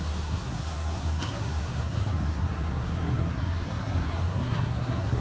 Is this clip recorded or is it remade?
remade